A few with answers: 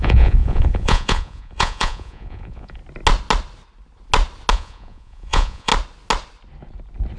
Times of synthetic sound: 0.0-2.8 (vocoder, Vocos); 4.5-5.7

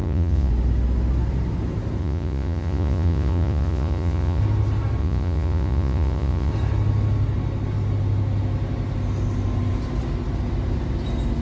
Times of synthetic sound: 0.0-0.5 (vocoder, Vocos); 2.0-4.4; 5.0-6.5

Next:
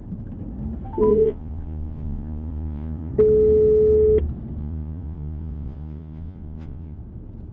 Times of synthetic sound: 1.1-3.1 (vocoder, Vocos); 4.6-7.0

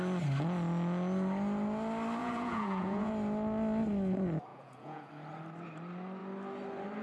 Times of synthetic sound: 2.2-3.1 (vocoder, Vocos); 4.5-5.1

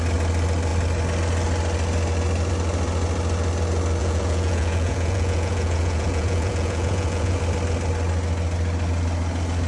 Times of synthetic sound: 4.0-7.4 (vocoder, Vocos)

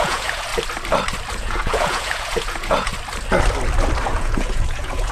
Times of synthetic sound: 0.0-0.5 (vocoder, Vocos); 1.3-2.9; 4.1-5.1

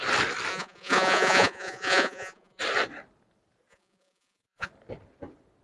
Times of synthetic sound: 0.5-2.6 (vocoder, Vocos); 3.7-4.7

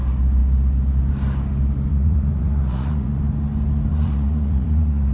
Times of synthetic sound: 1.9-3.2 (vocoder, Vocos); 3.9-5.1